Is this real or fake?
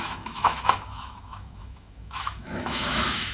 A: fake